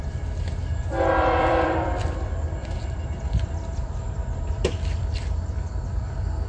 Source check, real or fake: fake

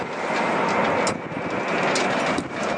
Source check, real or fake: real